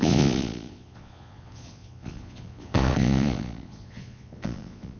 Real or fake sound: fake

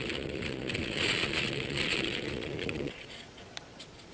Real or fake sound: fake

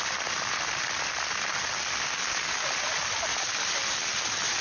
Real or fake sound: real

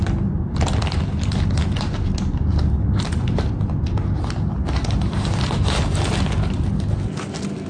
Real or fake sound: real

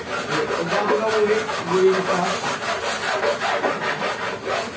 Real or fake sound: real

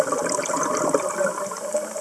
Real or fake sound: real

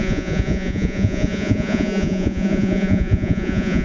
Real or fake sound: fake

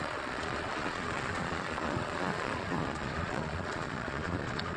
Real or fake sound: fake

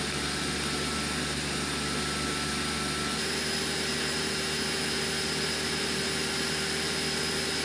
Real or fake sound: real